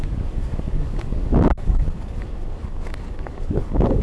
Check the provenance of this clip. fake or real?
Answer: fake